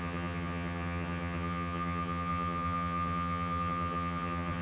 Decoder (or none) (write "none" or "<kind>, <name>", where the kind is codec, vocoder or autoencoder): vocoder, HiFi-GAN